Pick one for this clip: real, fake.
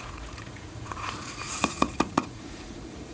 fake